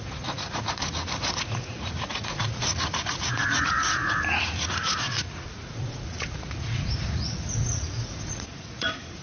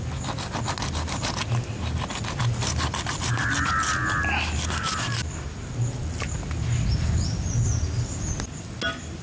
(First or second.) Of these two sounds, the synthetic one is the first